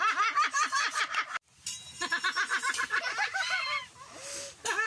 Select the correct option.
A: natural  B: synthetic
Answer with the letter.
A